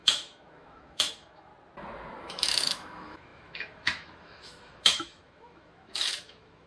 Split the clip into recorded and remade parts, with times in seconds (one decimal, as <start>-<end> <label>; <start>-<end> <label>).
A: 0.0-1.5 remade; 1.5-2.2 recorded; 2.2-6.7 remade